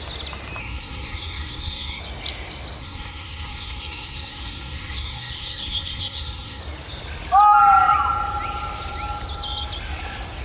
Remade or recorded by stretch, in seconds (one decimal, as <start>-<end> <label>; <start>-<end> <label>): 0.0-0.6 recorded; 0.6-2.0 remade; 2.0-2.8 recorded; 2.8-6.6 remade; 6.6-10.4 recorded

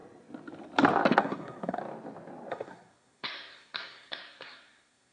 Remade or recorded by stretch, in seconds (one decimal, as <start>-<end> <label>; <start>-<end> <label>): 0.0-1.2 recorded; 1.2-1.8 remade; 1.8-2.5 recorded; 2.5-5.1 remade

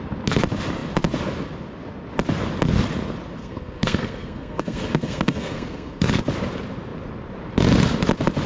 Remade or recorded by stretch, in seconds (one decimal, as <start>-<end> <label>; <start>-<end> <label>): 0.0-3.4 recorded; 3.4-6.2 remade; 6.2-8.5 recorded

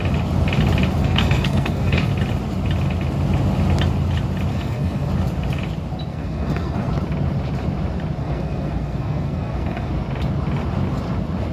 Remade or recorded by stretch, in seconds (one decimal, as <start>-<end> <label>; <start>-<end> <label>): 0.0-1.0 recorded; 1.0-2.1 remade; 2.1-4.5 recorded; 4.5-5.1 remade; 5.1-6.1 recorded; 6.1-6.9 remade; 6.9-8.2 recorded; 8.2-9.9 remade; 9.9-11.5 recorded